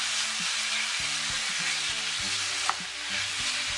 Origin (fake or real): real